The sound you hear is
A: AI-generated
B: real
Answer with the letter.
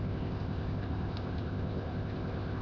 A